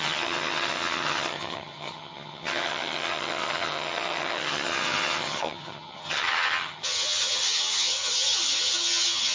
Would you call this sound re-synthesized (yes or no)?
yes